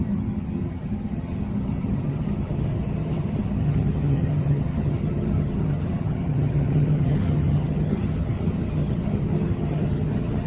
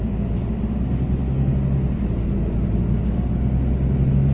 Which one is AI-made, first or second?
first